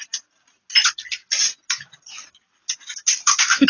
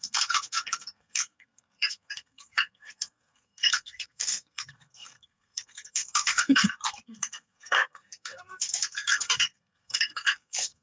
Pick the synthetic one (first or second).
second